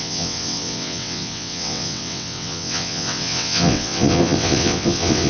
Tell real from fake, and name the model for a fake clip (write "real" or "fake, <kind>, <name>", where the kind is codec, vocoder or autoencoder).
fake, vocoder, WaveNeXt